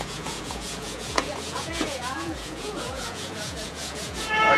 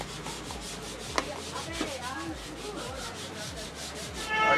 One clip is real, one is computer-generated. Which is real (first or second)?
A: second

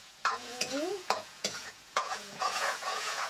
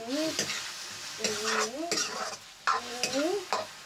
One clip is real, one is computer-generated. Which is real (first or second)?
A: second